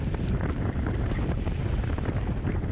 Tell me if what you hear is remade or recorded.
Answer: remade